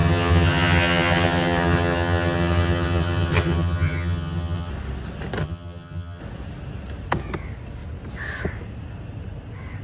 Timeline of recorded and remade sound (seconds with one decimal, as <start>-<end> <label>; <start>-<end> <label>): 0.0-4.7 remade; 4.7-5.4 recorded; 5.4-6.2 remade; 6.2-9.8 recorded